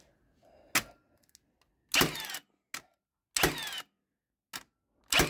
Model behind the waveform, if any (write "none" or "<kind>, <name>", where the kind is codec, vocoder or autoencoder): none